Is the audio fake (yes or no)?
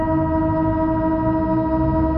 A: no